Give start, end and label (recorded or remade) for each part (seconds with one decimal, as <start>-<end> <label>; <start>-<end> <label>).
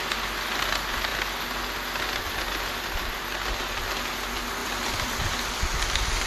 0.0-0.7 remade; 0.7-4.6 recorded; 4.6-5.8 remade; 5.8-6.3 recorded